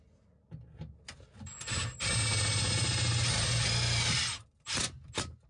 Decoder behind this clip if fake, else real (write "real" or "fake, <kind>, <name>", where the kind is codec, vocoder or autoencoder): real